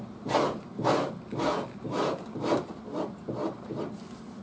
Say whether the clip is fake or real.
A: real